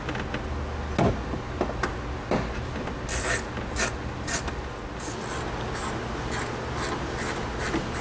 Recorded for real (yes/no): yes